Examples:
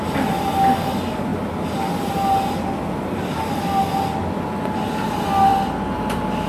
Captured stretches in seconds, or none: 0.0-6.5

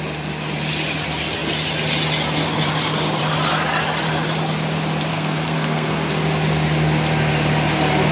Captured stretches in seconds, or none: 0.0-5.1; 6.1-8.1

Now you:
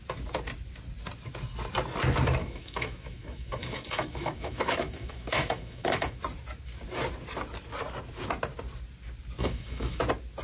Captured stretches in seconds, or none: 0.0-2.4; 6.2-9.4; 10.0-10.4

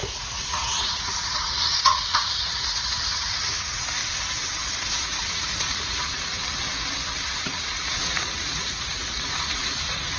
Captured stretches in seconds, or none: 4.0-4.7; 6.4-7.4